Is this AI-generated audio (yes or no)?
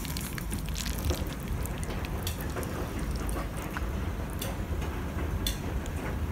no